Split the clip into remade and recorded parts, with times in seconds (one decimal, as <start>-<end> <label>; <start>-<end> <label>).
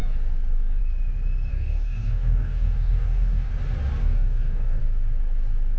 0.0-1.5 recorded; 1.5-3.5 remade; 3.5-4.0 recorded; 4.0-4.8 remade; 4.8-5.8 recorded